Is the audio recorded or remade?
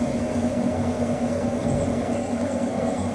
remade